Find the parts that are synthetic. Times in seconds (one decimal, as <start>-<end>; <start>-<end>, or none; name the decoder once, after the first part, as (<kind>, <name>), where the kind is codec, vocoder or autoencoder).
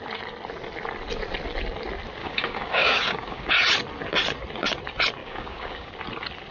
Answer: 2.2-3.5 (codec, DAC); 5.2-5.9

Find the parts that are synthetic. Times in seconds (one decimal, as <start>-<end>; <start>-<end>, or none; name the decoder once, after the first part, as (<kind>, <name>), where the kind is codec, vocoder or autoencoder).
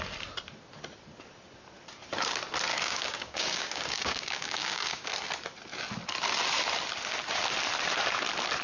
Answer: 2.7-5.1 (codec, DAC)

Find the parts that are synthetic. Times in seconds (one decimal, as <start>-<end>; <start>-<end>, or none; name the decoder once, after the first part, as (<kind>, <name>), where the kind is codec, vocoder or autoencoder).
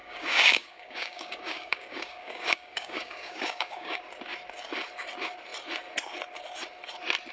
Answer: 0.0-4.0 (codec, DAC)